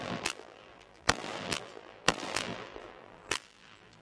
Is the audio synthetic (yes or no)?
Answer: yes